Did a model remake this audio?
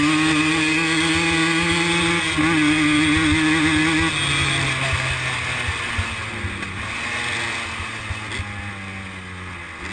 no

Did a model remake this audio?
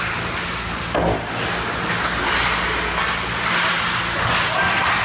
no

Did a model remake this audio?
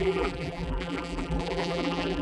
yes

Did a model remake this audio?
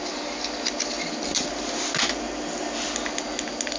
no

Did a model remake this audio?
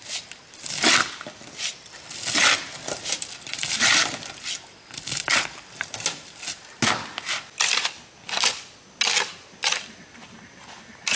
no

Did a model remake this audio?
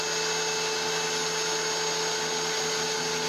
no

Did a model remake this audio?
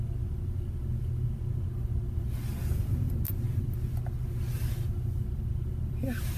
no